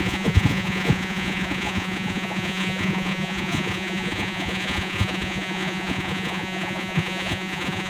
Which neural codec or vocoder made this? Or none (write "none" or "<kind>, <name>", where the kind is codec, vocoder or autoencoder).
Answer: vocoder, Vocos